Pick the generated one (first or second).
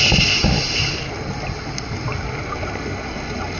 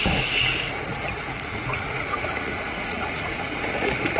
second